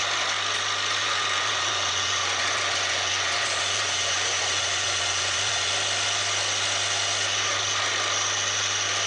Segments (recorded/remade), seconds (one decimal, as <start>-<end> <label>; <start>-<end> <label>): 0.0-1.0 recorded; 1.0-5.7 remade; 5.7-9.1 recorded